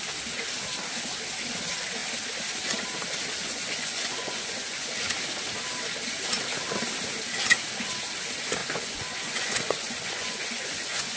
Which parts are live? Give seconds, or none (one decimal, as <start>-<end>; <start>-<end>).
0.0-3.4; 4.9-8.6